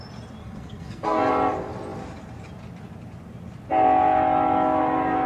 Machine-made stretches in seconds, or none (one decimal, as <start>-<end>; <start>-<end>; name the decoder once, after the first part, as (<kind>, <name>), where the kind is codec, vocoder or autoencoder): 0.4-1.3 (codec, SNAC)